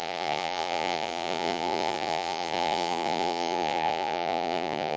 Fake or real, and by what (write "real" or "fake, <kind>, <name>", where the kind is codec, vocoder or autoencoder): fake, vocoder, Vocos